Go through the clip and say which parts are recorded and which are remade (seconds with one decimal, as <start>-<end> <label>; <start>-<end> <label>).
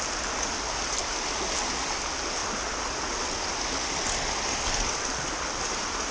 0.0-6.1 recorded